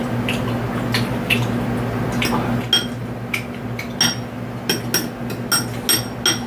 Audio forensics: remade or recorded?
recorded